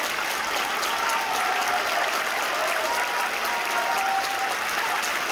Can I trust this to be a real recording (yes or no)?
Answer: yes